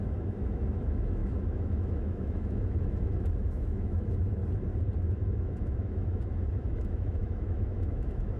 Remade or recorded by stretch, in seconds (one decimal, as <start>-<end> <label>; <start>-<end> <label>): 0.0-4.4 remade; 4.4-5.0 recorded; 5.0-8.4 remade

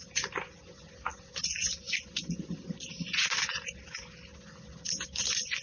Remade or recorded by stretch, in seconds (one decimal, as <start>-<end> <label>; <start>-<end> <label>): 0.0-5.6 recorded

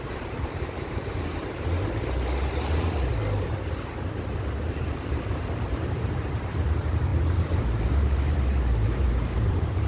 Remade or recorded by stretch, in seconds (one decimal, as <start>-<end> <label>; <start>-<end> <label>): 0.0-3.1 remade; 3.1-4.7 recorded; 4.7-9.9 remade